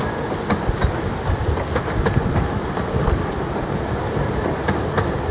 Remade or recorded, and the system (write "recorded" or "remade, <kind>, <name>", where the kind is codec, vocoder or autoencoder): recorded